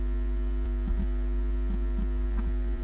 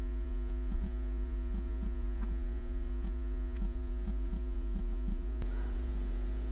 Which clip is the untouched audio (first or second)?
first